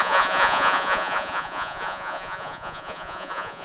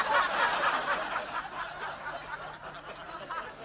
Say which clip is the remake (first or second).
first